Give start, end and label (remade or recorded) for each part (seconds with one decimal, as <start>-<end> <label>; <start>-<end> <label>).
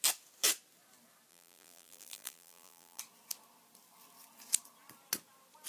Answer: 0.0-1.3 recorded; 1.3-3.0 remade; 3.0-5.7 recorded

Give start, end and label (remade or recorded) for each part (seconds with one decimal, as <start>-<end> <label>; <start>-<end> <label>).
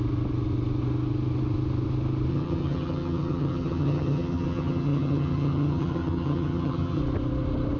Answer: 0.0-2.3 recorded; 2.3-7.0 remade; 7.0-7.8 recorded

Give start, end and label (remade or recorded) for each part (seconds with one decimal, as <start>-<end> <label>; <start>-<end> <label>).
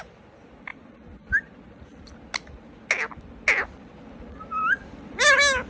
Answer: 0.0-5.7 recorded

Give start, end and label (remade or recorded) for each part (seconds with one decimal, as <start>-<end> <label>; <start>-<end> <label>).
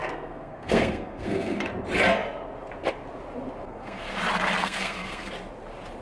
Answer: 0.0-1.7 remade; 1.7-3.6 recorded; 3.6-4.1 remade; 4.1-4.6 recorded; 4.6-5.3 remade; 5.3-6.0 recorded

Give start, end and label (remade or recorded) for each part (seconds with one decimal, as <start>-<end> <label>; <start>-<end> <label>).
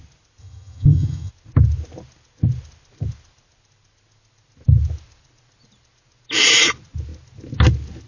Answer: 0.0-0.4 recorded; 0.4-1.3 remade; 1.3-8.1 recorded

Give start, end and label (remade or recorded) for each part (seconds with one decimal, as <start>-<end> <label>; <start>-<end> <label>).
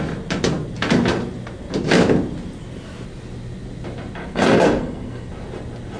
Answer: 0.0-4.2 recorded; 4.2-5.3 remade; 5.3-6.0 recorded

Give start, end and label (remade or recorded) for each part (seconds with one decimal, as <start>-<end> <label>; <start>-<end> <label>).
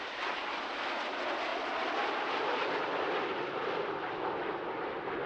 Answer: 0.0-1.5 recorded; 1.5-2.8 remade; 2.8-5.3 recorded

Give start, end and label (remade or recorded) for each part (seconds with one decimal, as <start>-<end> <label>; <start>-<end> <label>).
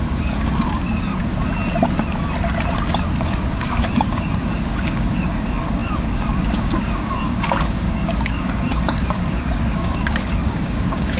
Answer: 0.0-1.1 remade; 1.1-2.9 recorded; 2.9-11.2 remade